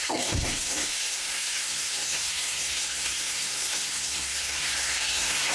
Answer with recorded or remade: remade